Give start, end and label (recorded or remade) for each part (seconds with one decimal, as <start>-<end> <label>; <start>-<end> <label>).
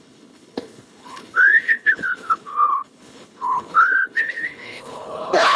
0.0-5.6 remade